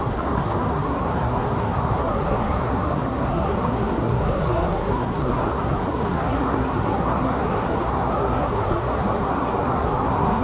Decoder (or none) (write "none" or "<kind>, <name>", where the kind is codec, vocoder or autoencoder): codec, SNAC